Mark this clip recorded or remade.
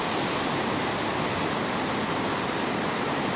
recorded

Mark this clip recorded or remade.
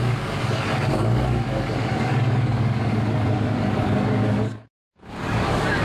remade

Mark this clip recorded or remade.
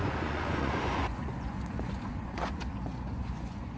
remade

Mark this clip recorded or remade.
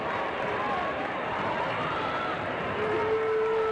remade